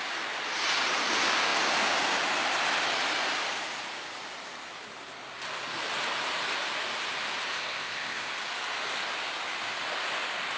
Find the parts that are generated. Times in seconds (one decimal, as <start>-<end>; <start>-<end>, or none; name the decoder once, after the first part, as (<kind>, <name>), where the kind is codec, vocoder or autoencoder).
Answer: 7.5-8.3 (codec, ZipCodec)